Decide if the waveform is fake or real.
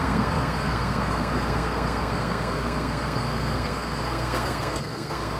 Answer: fake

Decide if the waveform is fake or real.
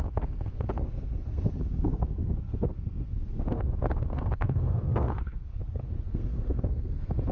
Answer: fake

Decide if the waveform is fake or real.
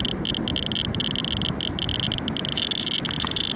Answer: real